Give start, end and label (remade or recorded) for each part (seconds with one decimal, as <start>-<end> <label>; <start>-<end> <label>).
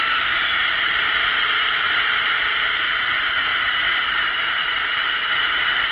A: 0.0-1.3 recorded; 1.3-1.8 remade; 1.8-3.5 recorded; 3.5-4.1 remade; 4.1-5.9 recorded